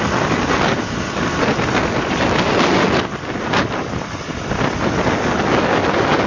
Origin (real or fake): real